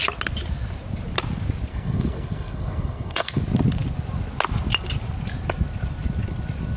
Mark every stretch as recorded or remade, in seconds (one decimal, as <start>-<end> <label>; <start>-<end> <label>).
0.0-1.7 recorded; 1.7-3.4 remade; 3.4-6.8 recorded